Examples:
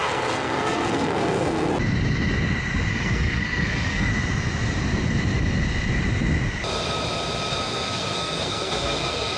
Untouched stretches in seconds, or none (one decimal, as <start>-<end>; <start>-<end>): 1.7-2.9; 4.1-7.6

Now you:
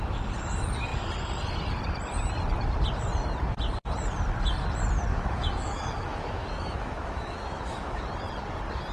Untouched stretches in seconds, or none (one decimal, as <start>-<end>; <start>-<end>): 0.0-5.1; 8.0-8.9

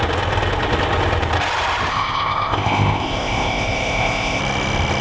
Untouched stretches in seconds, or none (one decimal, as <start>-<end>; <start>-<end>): 0.0-1.9; 4.4-5.0

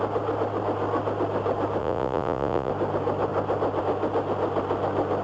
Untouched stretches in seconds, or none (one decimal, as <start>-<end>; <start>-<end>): 0.0-1.8; 2.7-5.2

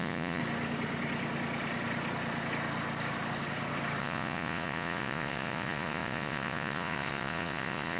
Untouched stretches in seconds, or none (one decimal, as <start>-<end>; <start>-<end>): 0.4-4.0